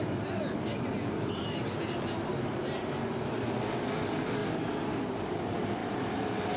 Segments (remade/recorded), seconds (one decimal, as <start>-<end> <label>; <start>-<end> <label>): 0.0-0.9 recorded; 0.9-3.3 remade; 3.3-4.4 recorded; 4.4-5.1 remade; 5.1-5.8 recorded; 5.8-6.6 remade